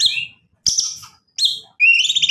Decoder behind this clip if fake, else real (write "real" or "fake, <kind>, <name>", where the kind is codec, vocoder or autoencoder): real